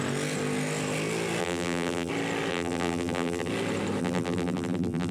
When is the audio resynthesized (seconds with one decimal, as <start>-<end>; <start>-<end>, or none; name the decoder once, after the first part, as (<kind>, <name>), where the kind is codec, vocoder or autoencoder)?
1.4-2.1 (vocoder, BigVGAN v2); 2.5-3.5; 4.0-5.1